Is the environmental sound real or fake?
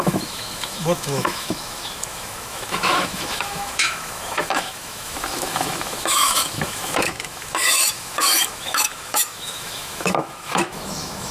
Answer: fake